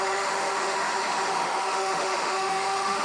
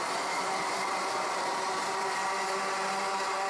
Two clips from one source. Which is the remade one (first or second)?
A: first